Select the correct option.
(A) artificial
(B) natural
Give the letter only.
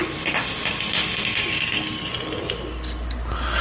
B